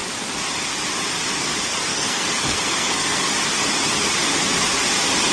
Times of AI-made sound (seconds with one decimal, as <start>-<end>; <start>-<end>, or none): 1.9-3.3